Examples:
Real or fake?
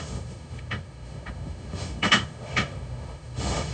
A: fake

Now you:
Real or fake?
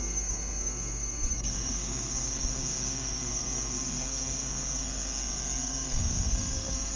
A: fake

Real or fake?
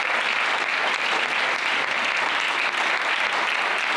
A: real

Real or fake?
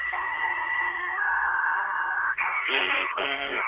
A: fake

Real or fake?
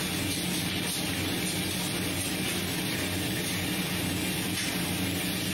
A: real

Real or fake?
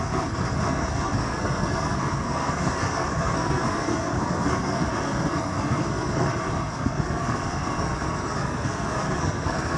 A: fake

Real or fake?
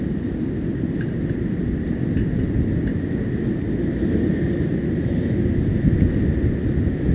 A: real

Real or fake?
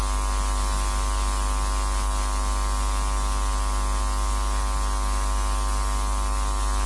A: real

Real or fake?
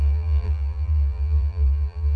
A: fake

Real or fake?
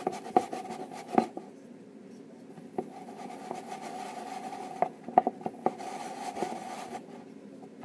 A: real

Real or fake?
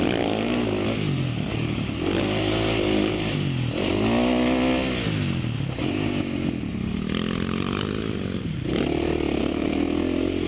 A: real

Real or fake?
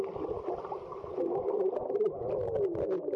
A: real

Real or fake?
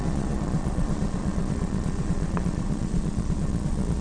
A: fake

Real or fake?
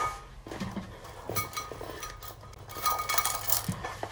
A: real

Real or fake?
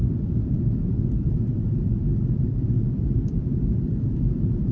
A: fake